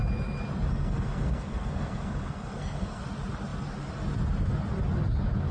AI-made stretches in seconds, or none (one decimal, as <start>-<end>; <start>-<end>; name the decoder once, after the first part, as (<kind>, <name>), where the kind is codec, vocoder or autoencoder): 0.7-3.0 (codec, SNAC)